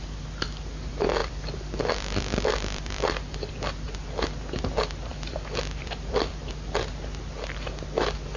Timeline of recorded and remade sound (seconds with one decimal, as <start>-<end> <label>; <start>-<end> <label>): 0.0-1.2 recorded; 1.2-3.5 remade; 3.5-5.1 recorded; 5.1-6.4 remade; 6.4-8.4 recorded

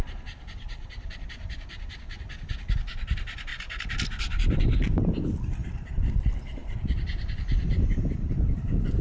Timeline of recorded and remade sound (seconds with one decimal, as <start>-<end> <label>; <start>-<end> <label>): 0.0-3.5 recorded; 3.5-5.9 remade; 5.9-9.0 recorded

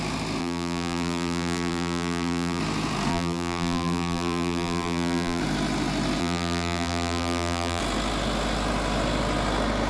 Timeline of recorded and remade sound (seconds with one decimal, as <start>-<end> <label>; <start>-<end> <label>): 0.0-0.4 recorded; 0.4-2.6 remade; 2.6-3.1 recorded; 3.1-5.4 remade; 5.4-6.2 recorded; 6.2-7.8 remade; 7.8-9.9 recorded

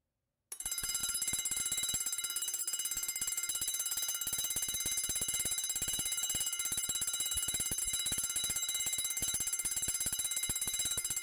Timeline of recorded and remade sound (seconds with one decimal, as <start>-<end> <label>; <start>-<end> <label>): 0.0-11.2 recorded

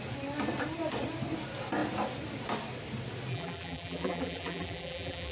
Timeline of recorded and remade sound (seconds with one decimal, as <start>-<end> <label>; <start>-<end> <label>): 0.0-3.3 recorded; 3.3-5.3 remade

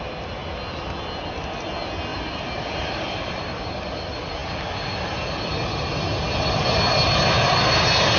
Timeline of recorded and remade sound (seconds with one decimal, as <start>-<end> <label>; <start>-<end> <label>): 0.0-2.1 recorded; 2.1-3.7 remade; 3.7-8.2 recorded

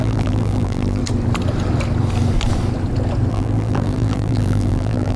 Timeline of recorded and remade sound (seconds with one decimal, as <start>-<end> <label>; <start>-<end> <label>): 0.0-1.0 remade; 1.0-3.3 recorded; 3.3-5.2 remade

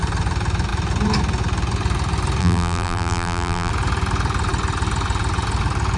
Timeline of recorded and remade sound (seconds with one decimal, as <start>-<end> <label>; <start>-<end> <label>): 0.0-2.4 recorded; 2.4-3.7 remade; 3.7-6.0 recorded